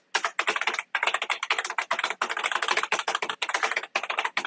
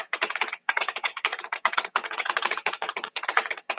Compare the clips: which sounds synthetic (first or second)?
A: second